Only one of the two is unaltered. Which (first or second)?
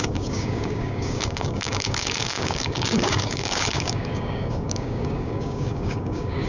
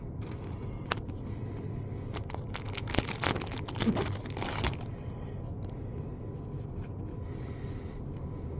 second